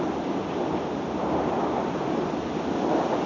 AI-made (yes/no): no